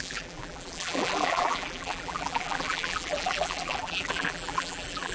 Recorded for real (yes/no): no